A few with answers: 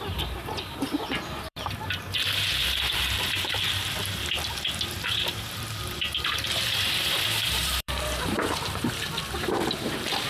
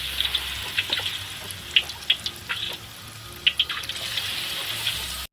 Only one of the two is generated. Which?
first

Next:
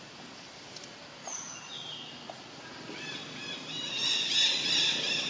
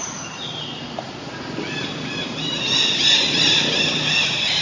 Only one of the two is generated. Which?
second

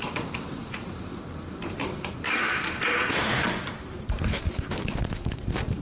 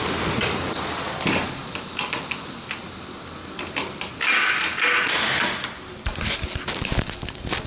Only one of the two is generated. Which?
first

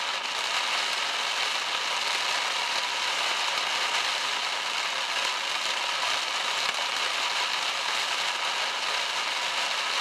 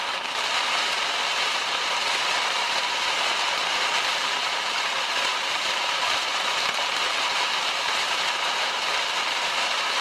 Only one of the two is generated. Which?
second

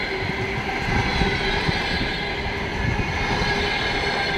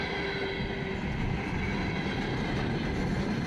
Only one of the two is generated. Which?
first